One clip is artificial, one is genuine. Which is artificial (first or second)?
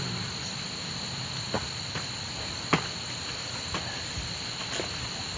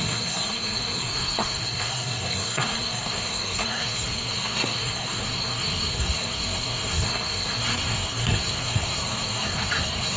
second